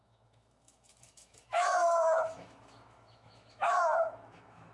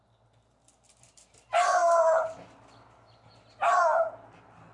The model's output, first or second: first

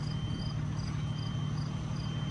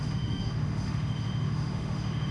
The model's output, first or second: second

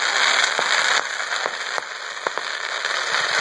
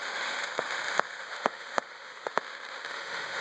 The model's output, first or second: second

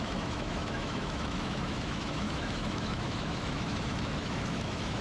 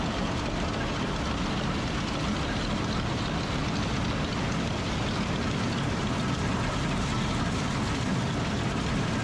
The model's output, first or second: first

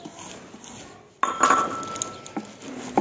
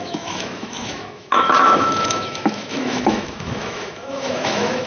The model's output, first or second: second